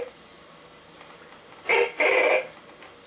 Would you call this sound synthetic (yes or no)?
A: no